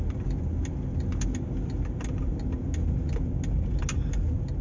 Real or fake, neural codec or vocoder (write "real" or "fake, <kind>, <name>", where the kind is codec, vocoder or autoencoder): real